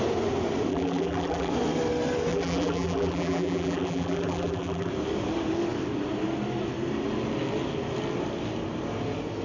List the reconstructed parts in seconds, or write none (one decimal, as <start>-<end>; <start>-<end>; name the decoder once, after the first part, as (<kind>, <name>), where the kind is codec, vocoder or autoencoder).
0.7-1.5 (vocoder, BigVGAN v2); 2.3-4.9